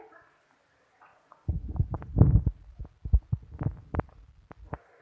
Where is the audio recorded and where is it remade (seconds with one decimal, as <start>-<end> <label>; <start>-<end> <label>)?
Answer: 0.0-1.1 recorded; 1.1-2.1 remade; 2.1-5.0 recorded